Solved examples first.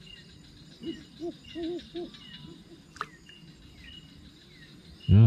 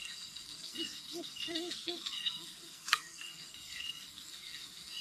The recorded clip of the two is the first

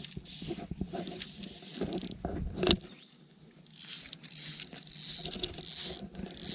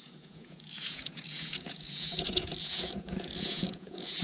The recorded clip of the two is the first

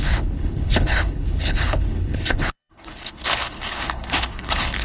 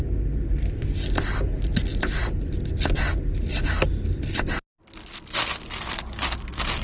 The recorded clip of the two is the second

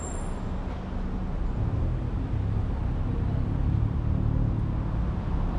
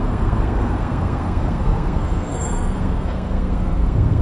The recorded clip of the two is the first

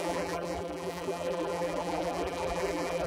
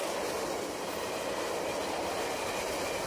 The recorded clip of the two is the second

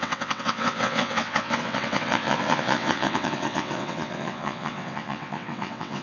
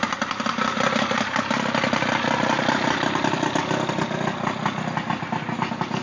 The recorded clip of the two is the second